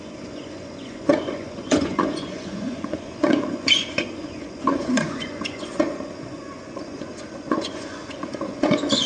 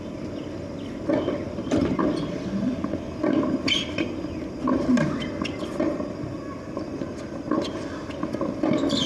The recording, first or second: second